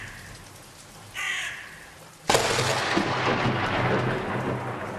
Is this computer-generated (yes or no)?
no